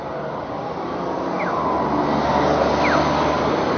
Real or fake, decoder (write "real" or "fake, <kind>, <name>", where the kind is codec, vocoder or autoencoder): real